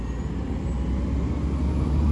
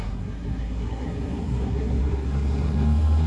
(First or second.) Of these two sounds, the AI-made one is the second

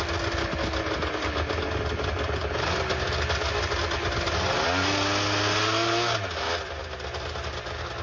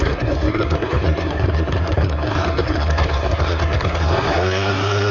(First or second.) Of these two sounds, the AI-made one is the second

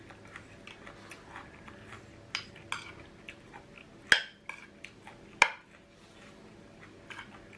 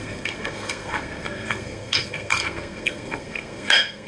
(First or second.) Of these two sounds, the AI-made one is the second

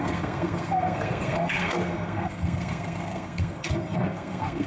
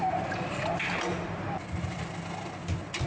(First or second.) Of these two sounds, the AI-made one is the first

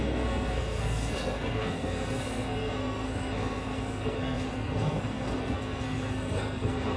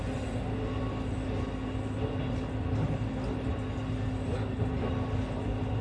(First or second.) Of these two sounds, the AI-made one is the first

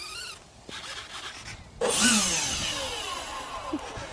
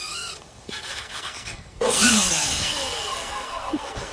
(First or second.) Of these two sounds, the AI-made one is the second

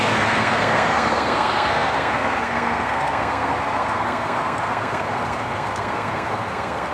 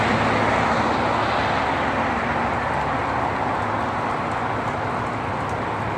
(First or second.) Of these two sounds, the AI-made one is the first